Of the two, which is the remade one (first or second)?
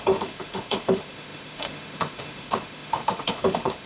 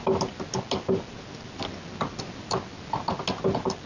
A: first